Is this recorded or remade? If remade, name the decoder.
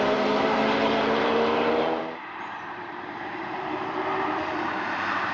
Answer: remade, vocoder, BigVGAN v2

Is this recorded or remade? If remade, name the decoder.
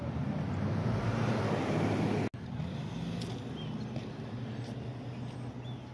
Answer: recorded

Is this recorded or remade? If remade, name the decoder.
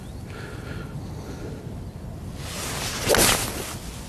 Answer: recorded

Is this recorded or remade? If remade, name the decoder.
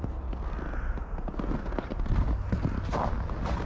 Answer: recorded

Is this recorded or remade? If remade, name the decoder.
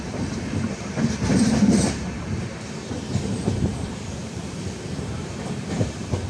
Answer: remade, vocoder, BigVGAN v2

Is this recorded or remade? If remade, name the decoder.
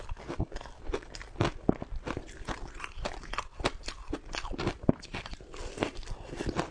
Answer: remade, vocoder, BigVGAN v2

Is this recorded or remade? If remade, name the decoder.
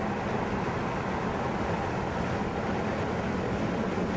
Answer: recorded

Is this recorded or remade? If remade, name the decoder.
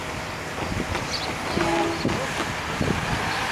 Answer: recorded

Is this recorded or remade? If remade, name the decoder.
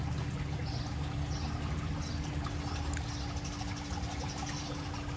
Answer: recorded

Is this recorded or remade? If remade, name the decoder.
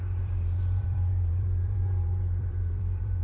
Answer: remade, vocoder, BigVGAN v2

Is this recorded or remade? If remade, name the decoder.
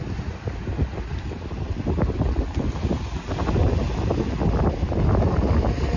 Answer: recorded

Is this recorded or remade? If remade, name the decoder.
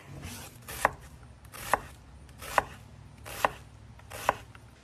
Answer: recorded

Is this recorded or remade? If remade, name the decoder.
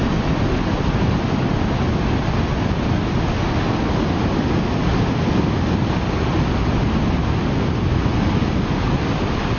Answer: recorded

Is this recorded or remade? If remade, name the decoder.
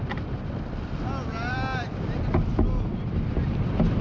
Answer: remade, vocoder, BigVGAN v2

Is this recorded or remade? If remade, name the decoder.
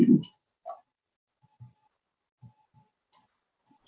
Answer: remade, vocoder, BigVGAN v2